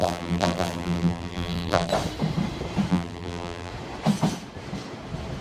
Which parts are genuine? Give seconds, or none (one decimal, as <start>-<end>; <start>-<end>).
1.9-2.9; 3.7-5.4